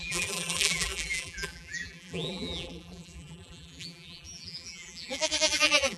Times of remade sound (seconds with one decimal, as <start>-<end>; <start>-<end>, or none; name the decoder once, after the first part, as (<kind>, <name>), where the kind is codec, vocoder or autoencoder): 0.0-6.0 (vocoder, BigVGAN v2)